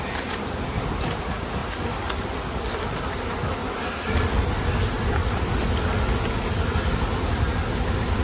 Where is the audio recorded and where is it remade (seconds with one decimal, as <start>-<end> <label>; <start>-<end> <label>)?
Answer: 0.0-8.2 recorded